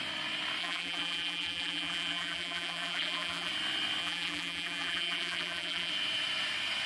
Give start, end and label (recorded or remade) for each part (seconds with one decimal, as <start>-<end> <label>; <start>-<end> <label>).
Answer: 0.0-0.6 recorded; 0.6-3.5 remade; 3.5-4.0 recorded; 4.0-5.9 remade; 5.9-6.9 recorded